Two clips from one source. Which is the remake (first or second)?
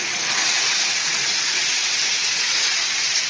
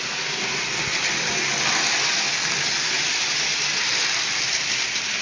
first